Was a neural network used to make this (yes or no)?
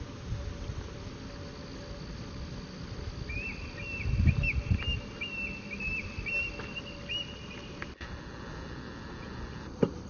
no